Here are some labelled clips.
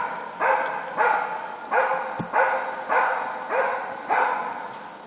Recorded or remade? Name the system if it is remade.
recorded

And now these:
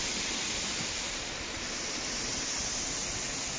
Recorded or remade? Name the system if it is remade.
recorded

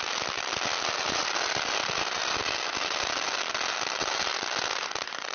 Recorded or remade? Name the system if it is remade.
recorded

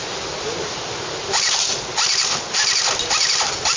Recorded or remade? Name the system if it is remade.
recorded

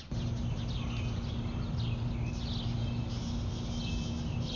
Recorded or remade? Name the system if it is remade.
recorded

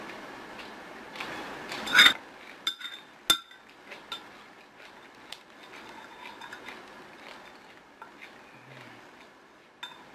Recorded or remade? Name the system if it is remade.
recorded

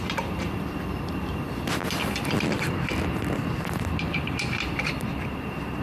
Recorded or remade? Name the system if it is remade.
remade, vocoder, BigVGAN v2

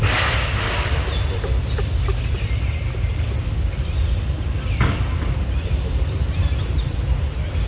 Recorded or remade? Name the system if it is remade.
recorded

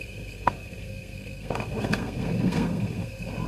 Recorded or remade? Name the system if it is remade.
remade, codec, SNAC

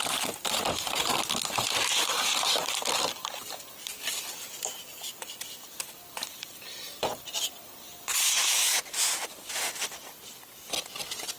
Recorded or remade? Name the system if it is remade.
remade, vocoder, BigVGAN v2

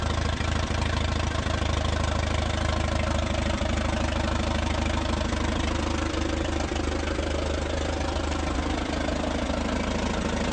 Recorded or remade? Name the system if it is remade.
recorded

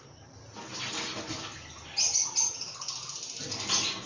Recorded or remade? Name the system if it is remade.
recorded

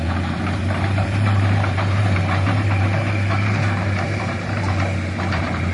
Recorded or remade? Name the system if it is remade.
remade, vocoder, BigVGAN v2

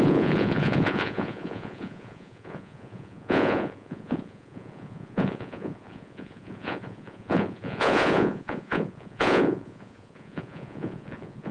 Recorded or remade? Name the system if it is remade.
remade, vocoder, Vocos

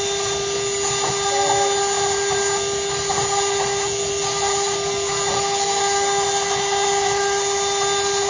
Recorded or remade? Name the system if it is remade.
recorded